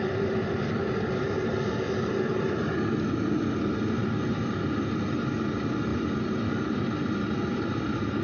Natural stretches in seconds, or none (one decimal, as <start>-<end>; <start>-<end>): 0.0-8.2